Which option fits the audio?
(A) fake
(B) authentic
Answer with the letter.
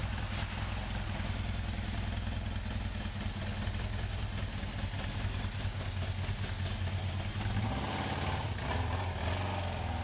B